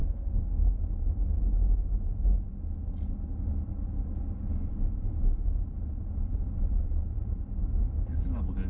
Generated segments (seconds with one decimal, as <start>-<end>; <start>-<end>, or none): 0.0-0.8